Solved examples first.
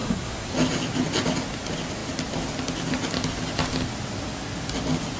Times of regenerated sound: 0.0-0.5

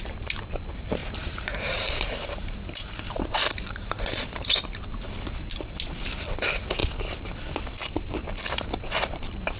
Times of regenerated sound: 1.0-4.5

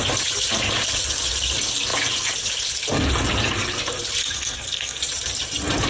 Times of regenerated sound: 4.2-5.0